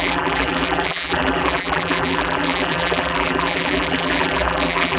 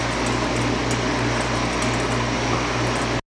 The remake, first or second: first